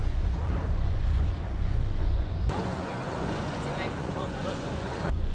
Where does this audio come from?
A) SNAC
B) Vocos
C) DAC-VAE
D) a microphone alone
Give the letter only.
B